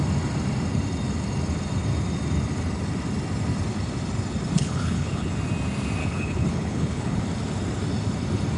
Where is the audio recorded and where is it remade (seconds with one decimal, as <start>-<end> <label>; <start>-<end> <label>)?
0.0-4.6 recorded; 4.6-5.3 remade; 5.3-6.0 recorded; 6.0-7.2 remade; 7.2-8.6 recorded